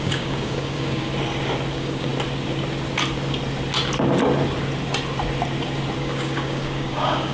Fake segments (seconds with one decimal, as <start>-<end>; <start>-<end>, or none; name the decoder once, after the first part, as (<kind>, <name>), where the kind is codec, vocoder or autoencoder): 0.0-1.1 (codec, DAC); 1.7-2.1; 6.0-7.3